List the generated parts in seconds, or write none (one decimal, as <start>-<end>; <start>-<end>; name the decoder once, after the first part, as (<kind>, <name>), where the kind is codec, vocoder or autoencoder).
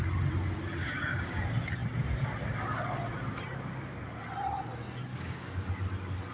0.8-1.4 (codec, DAC); 5.1-5.7